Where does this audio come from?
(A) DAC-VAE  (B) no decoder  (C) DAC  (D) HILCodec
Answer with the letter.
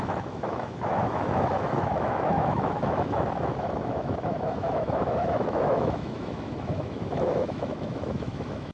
A